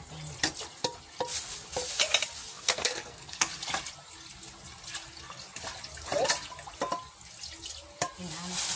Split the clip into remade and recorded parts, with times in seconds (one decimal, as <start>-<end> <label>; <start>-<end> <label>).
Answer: 0.0-2.5 recorded; 2.5-3.5 remade; 3.5-8.8 recorded